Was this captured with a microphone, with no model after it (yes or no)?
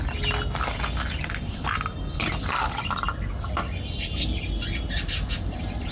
yes